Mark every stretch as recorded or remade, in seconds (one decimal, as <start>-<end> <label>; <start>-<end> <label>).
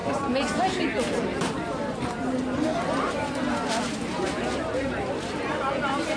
0.0-6.2 recorded